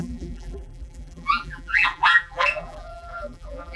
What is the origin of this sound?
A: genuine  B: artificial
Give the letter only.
B